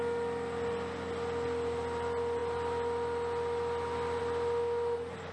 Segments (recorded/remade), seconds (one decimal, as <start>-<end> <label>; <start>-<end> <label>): 0.0-5.3 recorded

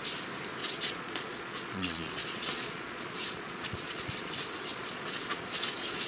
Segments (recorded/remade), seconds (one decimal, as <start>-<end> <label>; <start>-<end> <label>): 0.0-0.6 recorded; 0.6-4.3 remade; 4.3-4.7 recorded; 4.7-6.1 remade

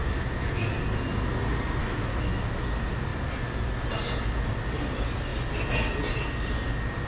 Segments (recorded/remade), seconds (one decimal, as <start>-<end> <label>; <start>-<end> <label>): 0.0-0.7 remade; 0.7-1.8 recorded; 1.8-2.7 remade; 2.7-7.1 recorded

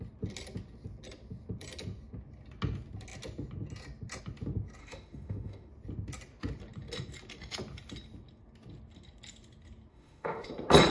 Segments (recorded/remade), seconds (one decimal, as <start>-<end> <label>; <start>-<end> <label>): 0.0-4.8 recorded; 4.8-5.7 remade; 5.7-9.9 recorded; 9.9-10.5 remade; 10.5-10.9 recorded

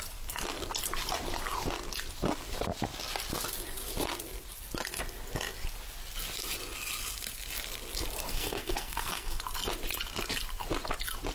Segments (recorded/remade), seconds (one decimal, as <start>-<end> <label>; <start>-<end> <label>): 0.0-8.3 recorded; 8.3-9.4 remade; 9.4-11.3 recorded

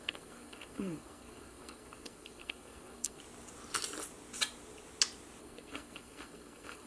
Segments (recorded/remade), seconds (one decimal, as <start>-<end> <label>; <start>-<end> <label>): 0.0-3.2 remade; 3.2-5.4 recorded; 5.4-6.9 remade